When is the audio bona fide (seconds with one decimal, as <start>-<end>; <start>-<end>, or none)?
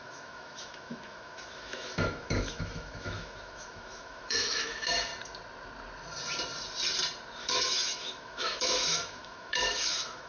5.1-7.4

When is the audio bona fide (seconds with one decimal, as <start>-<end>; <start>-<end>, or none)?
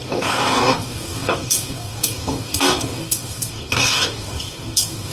none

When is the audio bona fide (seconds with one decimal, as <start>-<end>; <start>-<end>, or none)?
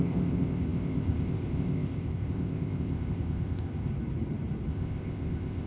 3.9-4.7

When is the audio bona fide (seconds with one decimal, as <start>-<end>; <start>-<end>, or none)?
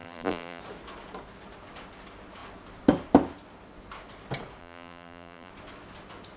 0.6-4.6; 5.5-6.4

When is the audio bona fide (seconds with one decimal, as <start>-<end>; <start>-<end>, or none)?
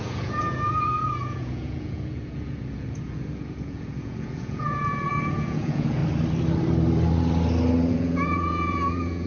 6.0-7.9